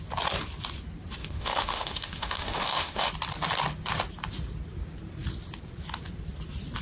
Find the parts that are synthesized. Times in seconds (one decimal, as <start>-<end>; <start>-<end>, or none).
1.2-3.1